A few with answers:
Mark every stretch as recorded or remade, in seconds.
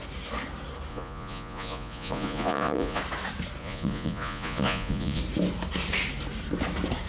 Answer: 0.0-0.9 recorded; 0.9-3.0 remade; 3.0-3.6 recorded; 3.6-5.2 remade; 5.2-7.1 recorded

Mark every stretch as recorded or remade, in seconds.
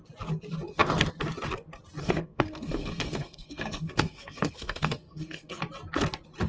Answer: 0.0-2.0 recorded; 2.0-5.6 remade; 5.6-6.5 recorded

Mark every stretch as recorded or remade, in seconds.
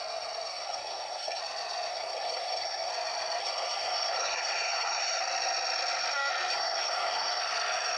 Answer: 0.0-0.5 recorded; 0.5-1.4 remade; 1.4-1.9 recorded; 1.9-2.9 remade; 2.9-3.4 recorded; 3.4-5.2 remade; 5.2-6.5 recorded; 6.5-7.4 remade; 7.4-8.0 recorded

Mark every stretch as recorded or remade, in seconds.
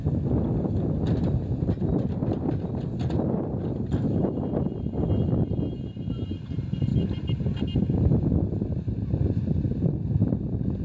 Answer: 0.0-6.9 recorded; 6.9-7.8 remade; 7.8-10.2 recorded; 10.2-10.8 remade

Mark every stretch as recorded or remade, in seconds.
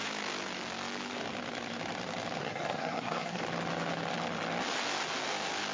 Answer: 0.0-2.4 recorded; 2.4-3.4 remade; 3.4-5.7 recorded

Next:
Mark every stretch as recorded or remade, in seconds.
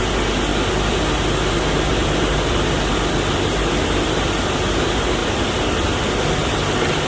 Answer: 0.0-5.2 recorded; 5.2-6.0 remade; 6.0-7.1 recorded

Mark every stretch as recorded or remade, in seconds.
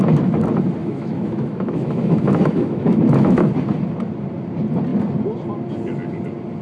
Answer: 0.0-0.8 recorded; 0.8-3.5 remade; 3.5-6.6 recorded